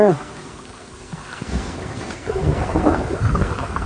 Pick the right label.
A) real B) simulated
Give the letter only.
B